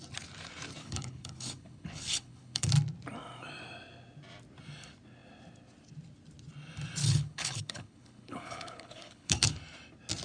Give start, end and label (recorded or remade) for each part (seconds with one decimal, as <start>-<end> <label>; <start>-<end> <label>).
0.0-0.8 recorded; 0.8-2.7 remade; 2.7-7.0 recorded; 7.0-9.6 remade; 9.6-10.2 recorded